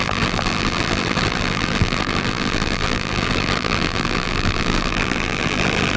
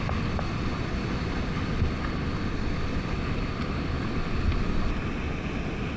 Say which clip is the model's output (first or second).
first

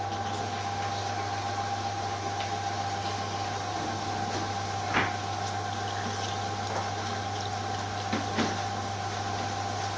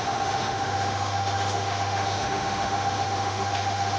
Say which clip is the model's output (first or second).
second